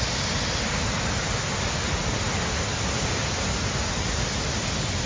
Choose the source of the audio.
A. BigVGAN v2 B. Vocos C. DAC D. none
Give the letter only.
D